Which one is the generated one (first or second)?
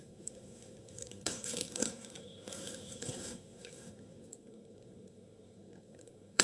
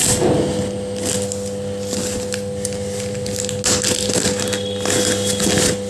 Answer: first